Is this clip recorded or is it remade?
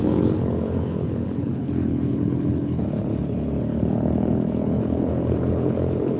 remade